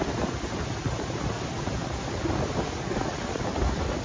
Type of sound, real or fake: real